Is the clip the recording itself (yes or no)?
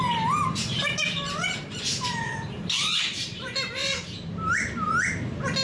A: no